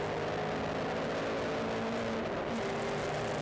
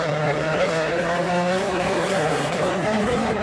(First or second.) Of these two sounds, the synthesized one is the second